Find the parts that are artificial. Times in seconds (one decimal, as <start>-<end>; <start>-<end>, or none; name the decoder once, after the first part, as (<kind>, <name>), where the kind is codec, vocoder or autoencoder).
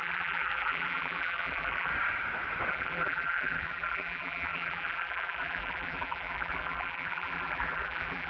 0.0-1.9 (vocoder, BigVGAN v2); 2.7-8.3